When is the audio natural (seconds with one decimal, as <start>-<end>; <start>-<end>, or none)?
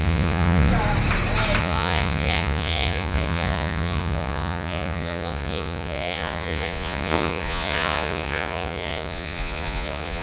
0.7-1.6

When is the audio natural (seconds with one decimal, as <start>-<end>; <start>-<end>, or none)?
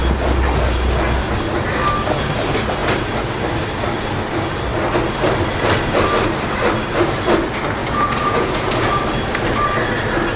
0.0-7.8; 8.9-10.4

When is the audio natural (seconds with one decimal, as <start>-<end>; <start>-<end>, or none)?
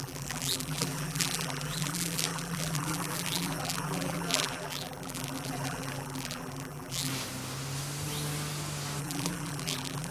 7.1-9.0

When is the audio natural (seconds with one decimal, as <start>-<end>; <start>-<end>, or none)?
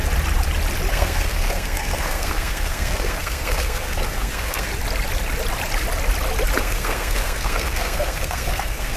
0.0-0.9; 4.7-6.6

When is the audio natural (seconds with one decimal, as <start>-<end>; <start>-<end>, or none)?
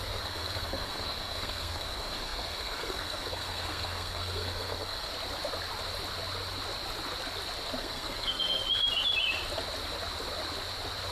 5.1-7.8; 8.6-11.1